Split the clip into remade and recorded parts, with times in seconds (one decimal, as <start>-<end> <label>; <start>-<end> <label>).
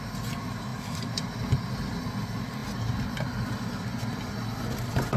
0.0-5.2 recorded